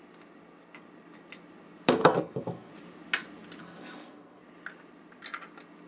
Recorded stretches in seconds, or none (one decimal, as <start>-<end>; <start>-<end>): 0.0-2.0; 2.7-3.6; 4.4-5.9

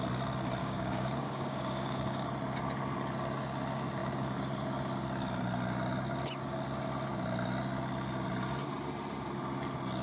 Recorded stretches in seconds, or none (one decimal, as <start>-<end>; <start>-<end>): 0.0-0.6; 2.3-10.0

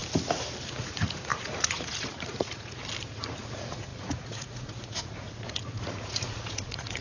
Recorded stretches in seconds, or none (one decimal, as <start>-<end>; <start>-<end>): 0.0-0.6; 2.8-3.4

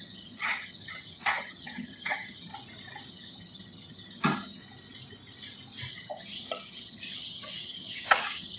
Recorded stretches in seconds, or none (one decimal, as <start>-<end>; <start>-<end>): 2.5-3.1; 4.6-5.9

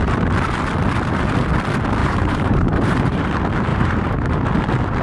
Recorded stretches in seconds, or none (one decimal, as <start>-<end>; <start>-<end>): 0.0-2.0; 3.3-3.7; 4.5-5.0

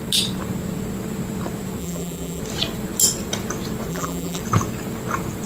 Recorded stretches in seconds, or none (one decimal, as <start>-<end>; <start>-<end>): 0.0-1.8; 2.4-3.9; 4.4-5.5

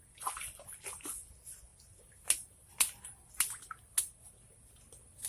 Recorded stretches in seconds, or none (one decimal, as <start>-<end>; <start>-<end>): 0.0-5.3

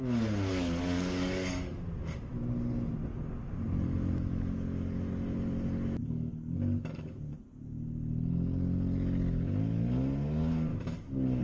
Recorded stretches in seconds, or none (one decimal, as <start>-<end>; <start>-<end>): 0.0-0.5; 1.7-6.0; 7.4-10.7